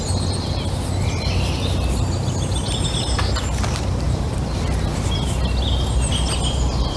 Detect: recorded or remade recorded